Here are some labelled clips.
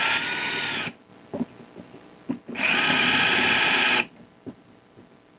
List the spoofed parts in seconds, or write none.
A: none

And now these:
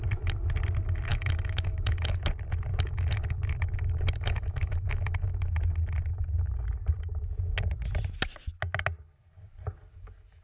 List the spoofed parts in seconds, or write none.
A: 1.1-2.2 (autoencoder, DAC-VAE); 2.7-5.6

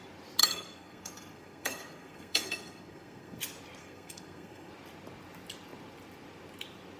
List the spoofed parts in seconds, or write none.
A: 0.4-3.4 (codec, SNAC); 3.8-4.7